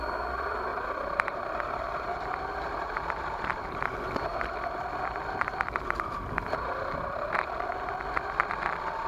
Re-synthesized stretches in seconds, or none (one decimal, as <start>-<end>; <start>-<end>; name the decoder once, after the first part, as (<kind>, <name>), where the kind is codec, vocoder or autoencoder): 0.7-3.9 (vocoder, BigVGAN v2)